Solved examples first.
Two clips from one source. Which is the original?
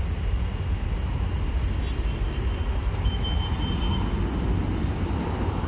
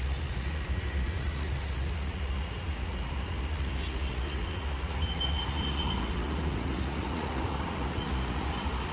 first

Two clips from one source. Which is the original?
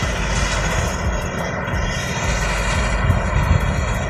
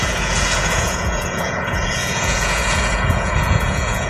first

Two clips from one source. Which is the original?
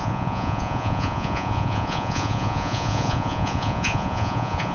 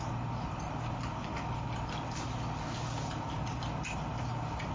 second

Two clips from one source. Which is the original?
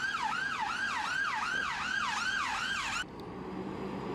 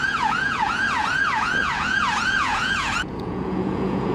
first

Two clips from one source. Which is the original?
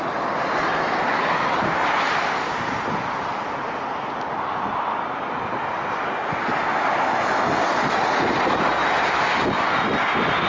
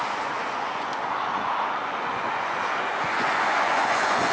first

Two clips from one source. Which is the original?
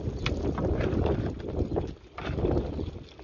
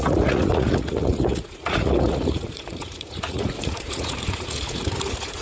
first